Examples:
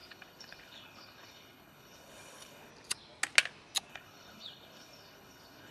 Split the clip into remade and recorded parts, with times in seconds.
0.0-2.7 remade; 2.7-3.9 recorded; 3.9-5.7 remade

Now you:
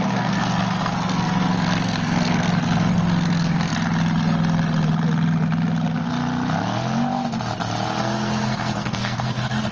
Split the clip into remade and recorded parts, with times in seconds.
0.0-3.7 remade; 3.7-8.0 recorded; 8.0-9.7 remade

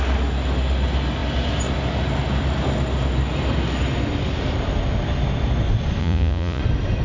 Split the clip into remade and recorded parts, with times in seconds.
0.0-6.0 recorded; 6.0-6.6 remade; 6.6-7.0 recorded

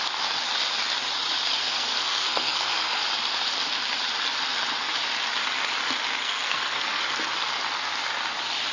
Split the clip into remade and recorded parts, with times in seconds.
0.0-1.6 recorded; 1.6-3.0 remade; 3.0-6.2 recorded; 6.2-7.0 remade; 7.0-8.7 recorded